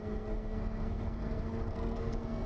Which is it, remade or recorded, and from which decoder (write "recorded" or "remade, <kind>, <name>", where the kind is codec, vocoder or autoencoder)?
remade, codec, SNAC